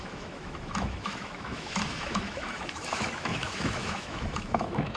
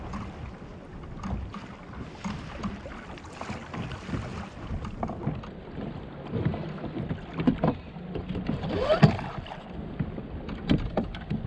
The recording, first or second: second